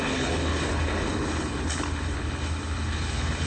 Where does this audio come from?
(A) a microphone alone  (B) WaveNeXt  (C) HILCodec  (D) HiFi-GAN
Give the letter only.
C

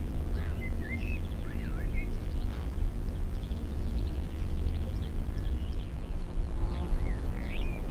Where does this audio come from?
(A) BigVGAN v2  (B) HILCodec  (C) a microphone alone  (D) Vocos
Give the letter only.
A